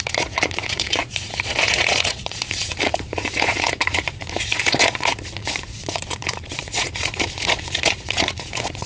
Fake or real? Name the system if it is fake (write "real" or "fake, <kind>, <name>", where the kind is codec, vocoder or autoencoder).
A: fake, vocoder, Vocos